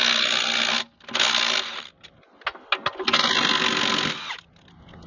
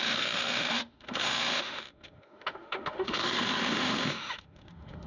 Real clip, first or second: first